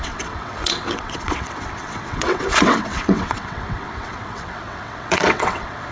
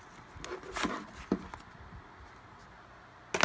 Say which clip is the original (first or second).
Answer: second